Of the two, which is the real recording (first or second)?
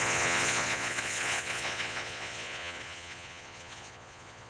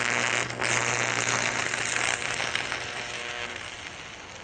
second